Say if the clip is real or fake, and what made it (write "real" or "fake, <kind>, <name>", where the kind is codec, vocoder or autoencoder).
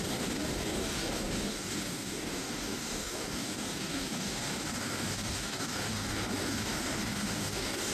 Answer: fake, codec, DAC